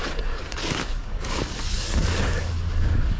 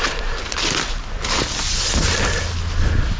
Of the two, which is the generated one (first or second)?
first